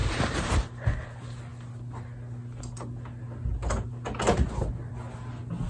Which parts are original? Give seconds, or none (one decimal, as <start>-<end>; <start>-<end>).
0.5-5.7